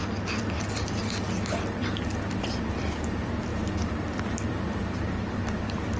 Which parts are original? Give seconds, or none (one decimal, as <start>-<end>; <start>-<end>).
none